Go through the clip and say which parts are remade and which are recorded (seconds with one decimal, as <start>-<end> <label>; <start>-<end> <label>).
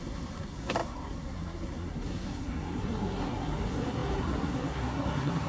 0.0-5.5 remade